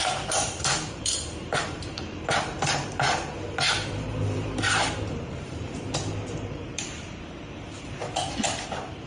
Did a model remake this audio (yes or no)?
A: yes